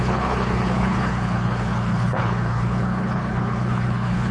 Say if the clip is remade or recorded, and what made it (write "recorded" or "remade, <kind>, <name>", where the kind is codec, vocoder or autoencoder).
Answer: remade, codec, HILCodec